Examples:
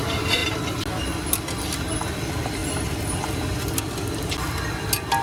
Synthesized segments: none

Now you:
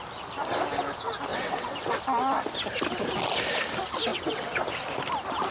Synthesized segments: 1.3-1.9 (vocoder, WaveNeXt); 4.1-4.6

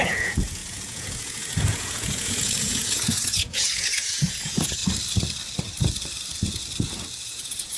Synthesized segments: 0.0-4.8 (vocoder, Vocos); 7.2-7.8

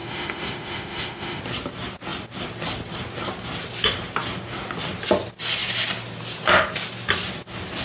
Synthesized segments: 0.0-1.4 (autoencoder, DAC-VAE)

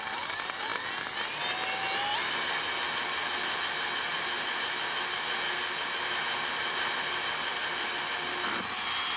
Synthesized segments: none

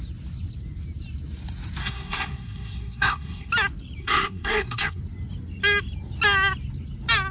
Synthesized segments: 1.8-3.5 (codec, SNAC); 4.0-5.0

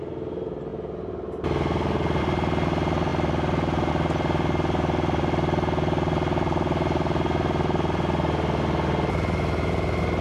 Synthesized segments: none

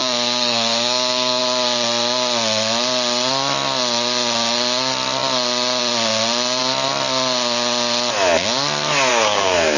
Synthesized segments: 0.0-1.4 (codec, DAC); 9.1-9.8